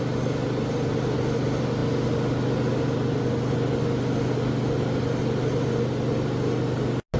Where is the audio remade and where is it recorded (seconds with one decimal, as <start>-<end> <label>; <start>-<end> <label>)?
0.0-7.2 recorded